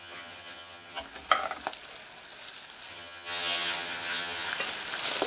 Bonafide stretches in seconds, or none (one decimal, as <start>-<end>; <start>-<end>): 1.0-2.9; 4.5-5.3